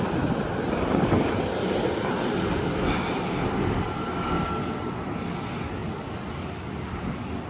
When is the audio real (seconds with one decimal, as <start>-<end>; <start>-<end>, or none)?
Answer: 0.0-7.5